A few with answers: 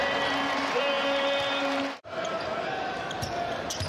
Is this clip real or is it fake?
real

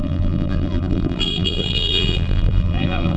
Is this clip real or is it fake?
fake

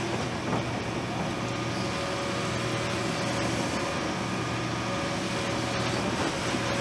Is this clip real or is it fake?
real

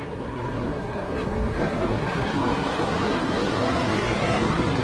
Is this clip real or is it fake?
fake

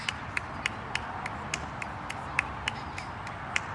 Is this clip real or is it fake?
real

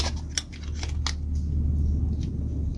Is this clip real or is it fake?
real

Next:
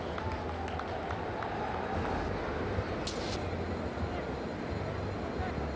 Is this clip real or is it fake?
real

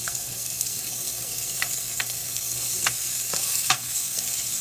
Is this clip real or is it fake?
fake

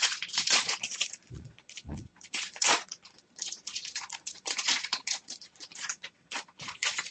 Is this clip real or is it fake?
fake